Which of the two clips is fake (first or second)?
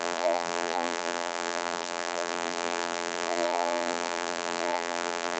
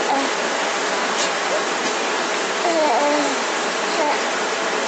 first